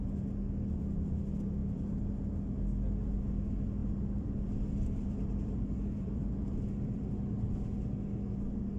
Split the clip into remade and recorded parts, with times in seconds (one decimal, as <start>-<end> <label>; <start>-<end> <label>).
0.0-1.6 recorded; 1.6-2.2 remade; 2.2-3.8 recorded; 3.8-7.1 remade; 7.1-8.8 recorded